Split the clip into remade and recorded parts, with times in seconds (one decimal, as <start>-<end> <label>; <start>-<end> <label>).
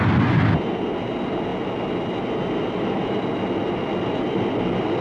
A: 0.0-5.0 recorded